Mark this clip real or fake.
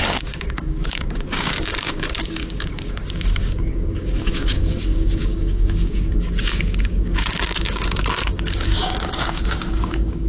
fake